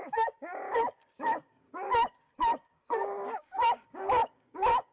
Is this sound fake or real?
fake